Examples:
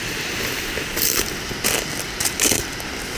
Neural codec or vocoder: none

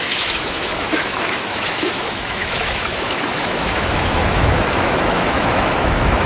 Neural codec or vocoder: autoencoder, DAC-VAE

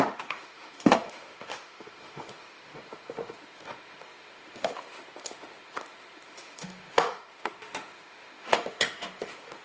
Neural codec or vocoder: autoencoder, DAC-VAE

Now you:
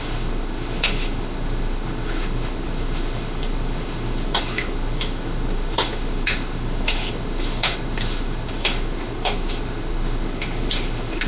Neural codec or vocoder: autoencoder, DAC-VAE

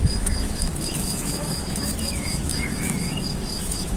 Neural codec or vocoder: autoencoder, DAC-VAE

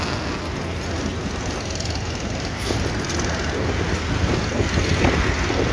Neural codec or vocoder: none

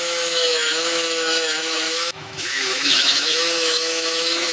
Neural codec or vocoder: autoencoder, DAC-VAE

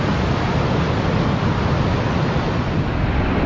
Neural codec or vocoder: none